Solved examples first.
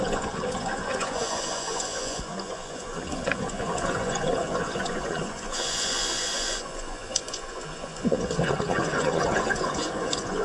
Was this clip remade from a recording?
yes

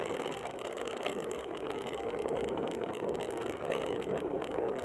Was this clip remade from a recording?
yes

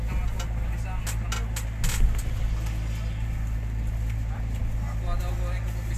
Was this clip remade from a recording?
no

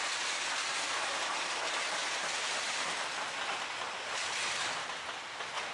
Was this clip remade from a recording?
no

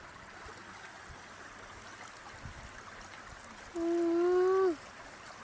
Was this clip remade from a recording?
no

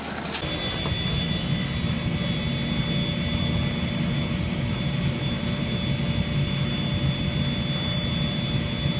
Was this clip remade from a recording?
no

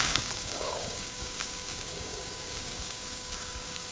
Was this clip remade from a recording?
yes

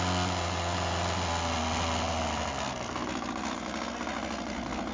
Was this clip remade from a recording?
no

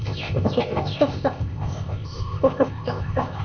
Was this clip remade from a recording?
yes